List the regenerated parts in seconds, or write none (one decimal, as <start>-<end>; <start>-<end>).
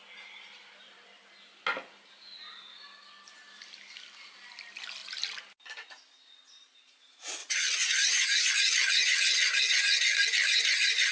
7.4-8.5; 8.9-10.0